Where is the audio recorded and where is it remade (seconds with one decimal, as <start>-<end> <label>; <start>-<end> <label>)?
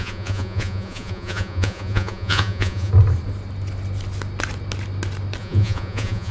0.0-2.9 remade; 2.9-5.4 recorded; 5.4-6.3 remade